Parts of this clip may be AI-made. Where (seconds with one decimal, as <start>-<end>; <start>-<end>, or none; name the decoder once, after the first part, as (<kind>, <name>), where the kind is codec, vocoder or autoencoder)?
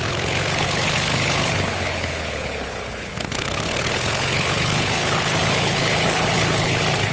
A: 0.0-7.1 (codec, HILCodec)